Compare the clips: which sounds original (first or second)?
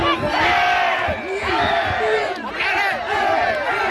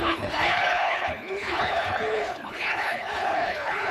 first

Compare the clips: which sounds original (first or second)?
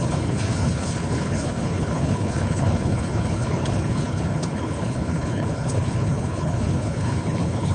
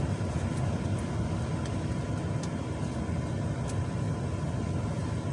second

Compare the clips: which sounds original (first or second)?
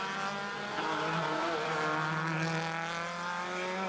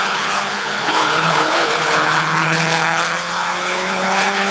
first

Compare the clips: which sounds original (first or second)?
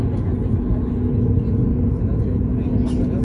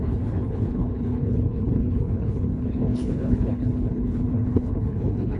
first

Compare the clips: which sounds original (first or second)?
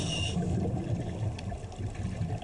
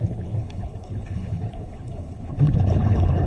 first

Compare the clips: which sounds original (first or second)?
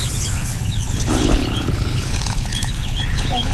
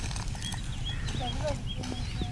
second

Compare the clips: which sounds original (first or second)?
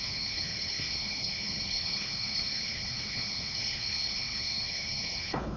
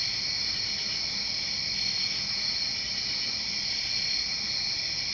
second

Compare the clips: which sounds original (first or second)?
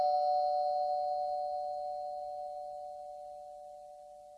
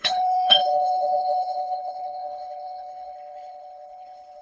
first